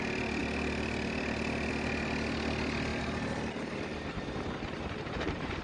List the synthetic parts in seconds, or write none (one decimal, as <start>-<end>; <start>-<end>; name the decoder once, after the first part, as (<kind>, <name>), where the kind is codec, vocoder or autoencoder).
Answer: 2.9-5.6 (vocoder, BigVGAN v2)